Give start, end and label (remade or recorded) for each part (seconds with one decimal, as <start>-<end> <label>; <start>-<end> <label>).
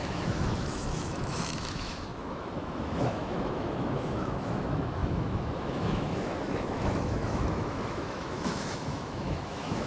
0.0-9.9 remade